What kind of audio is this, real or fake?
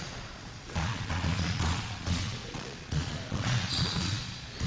fake